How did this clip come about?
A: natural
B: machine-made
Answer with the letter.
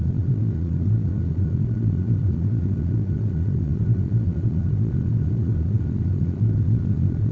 B